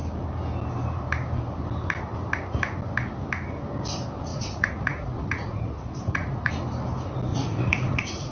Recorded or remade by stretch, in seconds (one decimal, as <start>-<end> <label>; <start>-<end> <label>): 0.0-4.3 recorded; 4.3-6.5 remade; 6.5-7.3 recorded; 7.3-8.3 remade